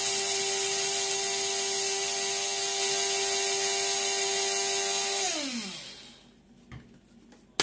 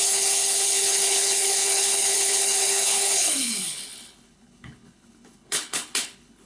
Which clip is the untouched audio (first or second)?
first